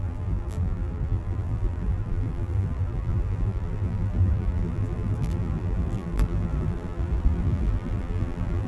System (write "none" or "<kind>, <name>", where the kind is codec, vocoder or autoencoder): vocoder, BigVGAN v2